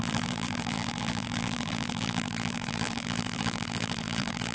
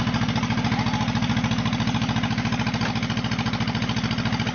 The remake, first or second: first